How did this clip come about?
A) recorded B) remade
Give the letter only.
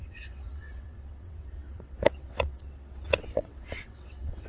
B